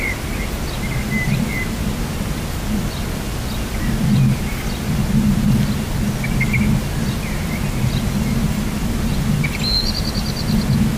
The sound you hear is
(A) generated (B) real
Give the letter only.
B